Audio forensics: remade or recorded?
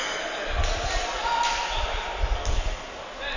recorded